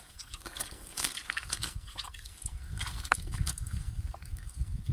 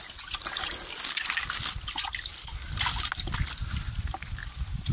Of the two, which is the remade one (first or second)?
first